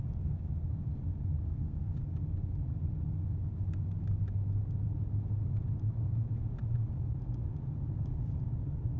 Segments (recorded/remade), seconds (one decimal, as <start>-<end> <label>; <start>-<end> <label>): 0.0-1.4 recorded; 1.4-1.9 remade; 1.9-9.0 recorded